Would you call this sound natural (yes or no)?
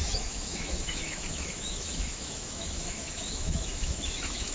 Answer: no